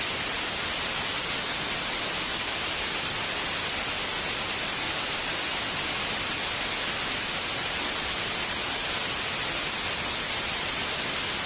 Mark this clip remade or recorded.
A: recorded